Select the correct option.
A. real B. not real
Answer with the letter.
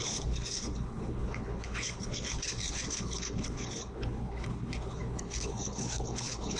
B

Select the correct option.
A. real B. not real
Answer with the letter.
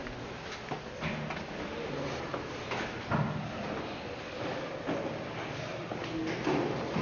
A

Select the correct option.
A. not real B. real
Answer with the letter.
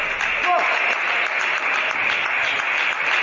B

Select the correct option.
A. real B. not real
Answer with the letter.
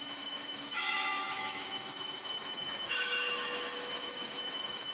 B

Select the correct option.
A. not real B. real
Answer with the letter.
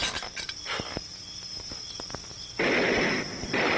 B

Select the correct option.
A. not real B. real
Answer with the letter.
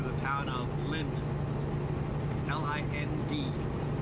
B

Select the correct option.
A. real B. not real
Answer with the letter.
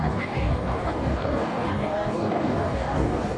B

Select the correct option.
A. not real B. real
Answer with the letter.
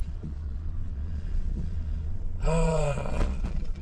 A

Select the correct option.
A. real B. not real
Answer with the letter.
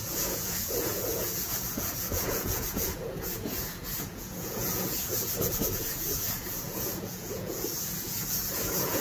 B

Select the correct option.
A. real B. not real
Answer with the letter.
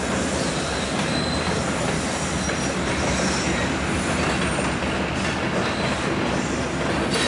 A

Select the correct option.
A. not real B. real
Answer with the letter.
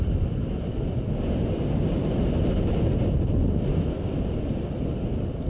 B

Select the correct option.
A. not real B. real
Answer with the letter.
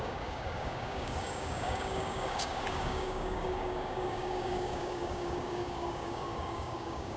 A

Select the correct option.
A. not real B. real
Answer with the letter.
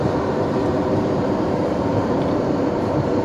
A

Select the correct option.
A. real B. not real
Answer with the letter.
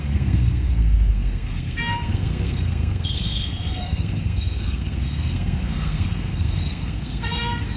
B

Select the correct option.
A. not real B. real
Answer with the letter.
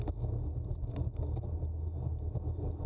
B